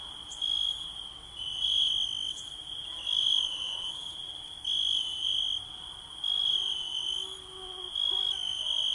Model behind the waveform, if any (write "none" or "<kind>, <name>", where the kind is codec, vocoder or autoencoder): none